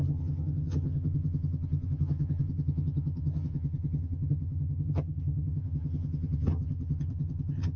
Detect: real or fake fake